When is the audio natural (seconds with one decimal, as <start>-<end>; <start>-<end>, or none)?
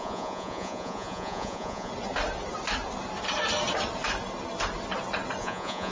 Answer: 1.9-5.4